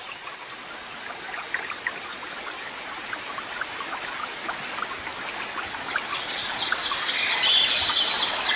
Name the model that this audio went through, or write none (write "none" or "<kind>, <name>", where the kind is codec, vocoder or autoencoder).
none